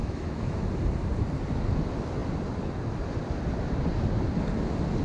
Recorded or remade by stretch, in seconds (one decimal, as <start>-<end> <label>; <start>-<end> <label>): 0.0-0.6 remade; 0.6-5.0 recorded